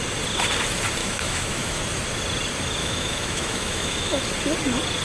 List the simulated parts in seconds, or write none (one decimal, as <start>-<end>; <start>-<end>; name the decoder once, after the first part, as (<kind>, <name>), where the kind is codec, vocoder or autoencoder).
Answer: 1.0-1.8 (autoencoder, DAC-VAE); 2.8-4.2